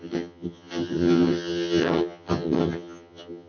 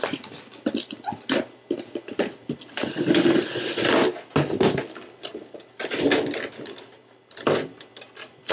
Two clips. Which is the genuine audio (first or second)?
second